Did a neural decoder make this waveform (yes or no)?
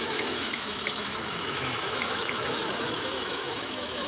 yes